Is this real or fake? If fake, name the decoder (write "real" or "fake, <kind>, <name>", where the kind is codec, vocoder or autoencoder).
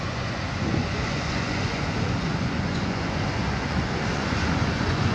fake, vocoder, Vocos